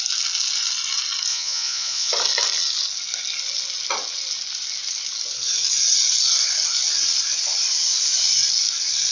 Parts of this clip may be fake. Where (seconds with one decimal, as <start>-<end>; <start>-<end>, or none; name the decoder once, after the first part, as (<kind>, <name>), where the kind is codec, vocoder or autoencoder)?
1.3-2.1 (vocoder, Vocos)